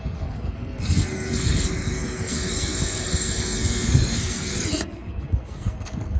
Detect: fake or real fake